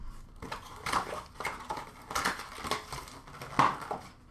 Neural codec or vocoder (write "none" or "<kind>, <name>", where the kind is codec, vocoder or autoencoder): none